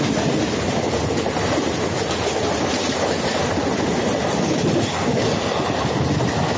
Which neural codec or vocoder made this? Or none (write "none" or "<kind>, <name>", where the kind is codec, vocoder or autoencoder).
none